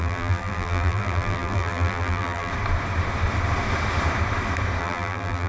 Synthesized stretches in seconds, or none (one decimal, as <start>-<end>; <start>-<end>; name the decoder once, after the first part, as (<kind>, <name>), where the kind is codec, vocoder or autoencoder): 0.0-2.5 (vocoder, BigVGAN v2); 4.8-5.5